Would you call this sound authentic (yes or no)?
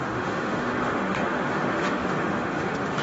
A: no